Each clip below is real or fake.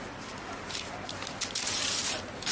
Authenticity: fake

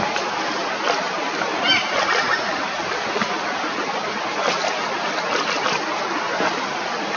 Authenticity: real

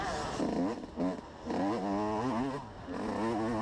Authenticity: real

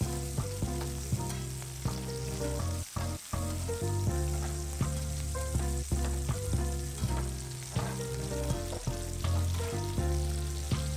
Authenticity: real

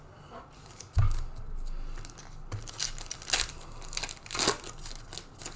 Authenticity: real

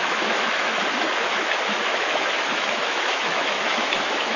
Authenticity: fake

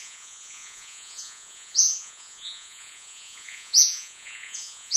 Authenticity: fake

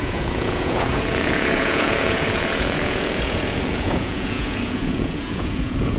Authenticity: fake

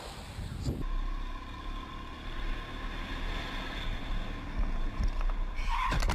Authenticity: real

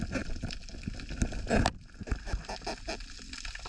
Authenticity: real